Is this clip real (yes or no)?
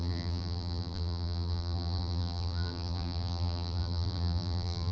no